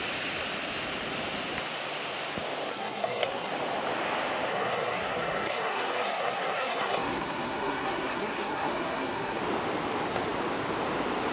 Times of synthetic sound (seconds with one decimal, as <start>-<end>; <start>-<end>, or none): 2.7-3.5; 4.5-9.4